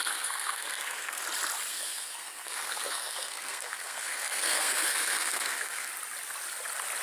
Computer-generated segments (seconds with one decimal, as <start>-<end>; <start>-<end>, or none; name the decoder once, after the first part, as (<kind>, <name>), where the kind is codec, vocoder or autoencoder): 0.0-1.2 (codec, SNAC); 1.7-5.9